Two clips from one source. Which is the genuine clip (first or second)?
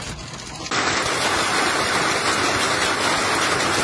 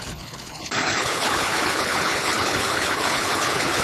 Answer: first